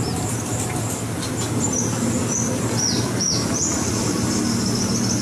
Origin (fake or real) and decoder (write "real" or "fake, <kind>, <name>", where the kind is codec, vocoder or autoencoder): real